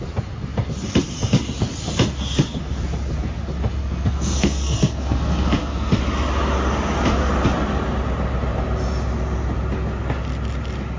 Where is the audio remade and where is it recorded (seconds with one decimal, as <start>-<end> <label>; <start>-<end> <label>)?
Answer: 0.0-3.8 recorded; 3.8-6.0 remade; 6.0-11.0 recorded